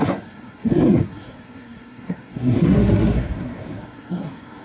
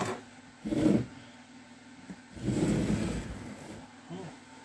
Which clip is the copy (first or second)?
first